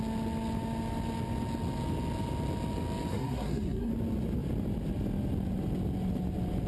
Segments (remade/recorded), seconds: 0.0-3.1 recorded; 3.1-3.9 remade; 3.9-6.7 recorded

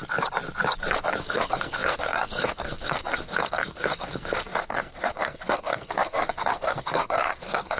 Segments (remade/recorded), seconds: 0.0-1.2 recorded; 1.2-7.8 remade

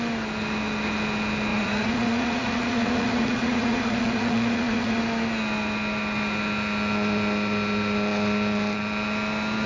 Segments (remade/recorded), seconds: 0.0-1.5 recorded; 1.5-5.0 remade; 5.0-9.7 recorded

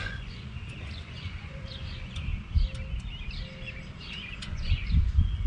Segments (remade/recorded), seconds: 0.0-2.3 remade; 2.3-4.0 recorded; 4.0-5.5 remade

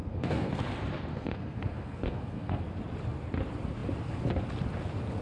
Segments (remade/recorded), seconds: 0.0-0.6 remade; 0.6-1.1 recorded; 1.1-2.6 remade; 2.6-5.2 recorded

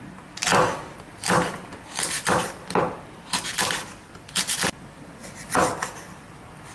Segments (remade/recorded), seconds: 0.0-6.7 recorded

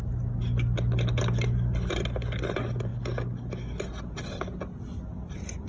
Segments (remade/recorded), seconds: 0.0-5.7 recorded

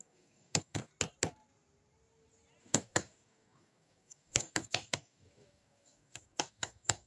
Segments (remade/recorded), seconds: 0.0-0.9 remade; 0.9-2.6 recorded; 2.6-7.1 remade